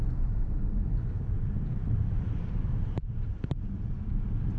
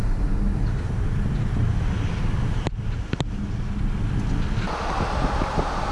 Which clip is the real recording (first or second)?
second